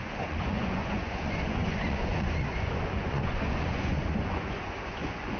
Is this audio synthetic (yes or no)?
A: yes